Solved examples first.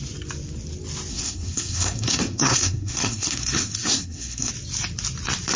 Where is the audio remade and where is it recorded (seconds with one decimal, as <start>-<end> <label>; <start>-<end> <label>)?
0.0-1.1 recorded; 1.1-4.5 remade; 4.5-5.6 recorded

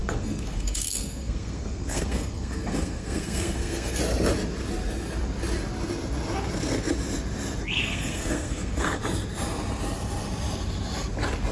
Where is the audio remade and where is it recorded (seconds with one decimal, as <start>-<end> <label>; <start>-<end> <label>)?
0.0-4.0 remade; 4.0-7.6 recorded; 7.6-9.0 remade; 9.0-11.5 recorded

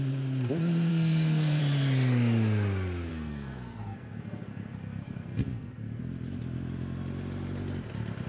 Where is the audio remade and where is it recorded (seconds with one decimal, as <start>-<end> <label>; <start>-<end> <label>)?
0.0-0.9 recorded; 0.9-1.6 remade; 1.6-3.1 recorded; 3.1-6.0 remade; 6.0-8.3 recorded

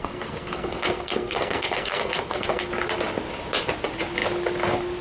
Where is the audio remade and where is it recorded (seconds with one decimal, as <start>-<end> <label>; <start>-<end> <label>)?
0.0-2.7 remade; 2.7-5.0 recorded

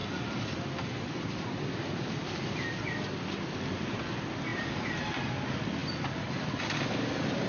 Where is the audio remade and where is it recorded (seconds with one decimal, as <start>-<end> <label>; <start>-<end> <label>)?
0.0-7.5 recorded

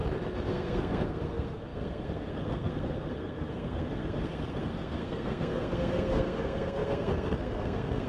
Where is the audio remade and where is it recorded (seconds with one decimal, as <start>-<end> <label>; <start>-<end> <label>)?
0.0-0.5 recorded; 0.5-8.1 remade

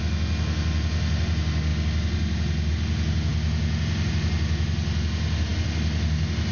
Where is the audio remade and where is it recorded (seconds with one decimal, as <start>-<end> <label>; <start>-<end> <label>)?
0.0-6.5 recorded